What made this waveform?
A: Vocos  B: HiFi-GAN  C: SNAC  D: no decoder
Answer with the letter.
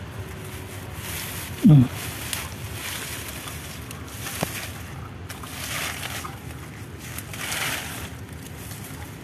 D